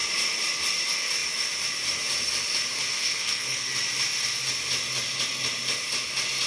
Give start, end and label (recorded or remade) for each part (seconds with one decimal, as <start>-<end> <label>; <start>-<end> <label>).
0.0-2.9 recorded; 2.9-3.7 remade; 3.7-6.5 recorded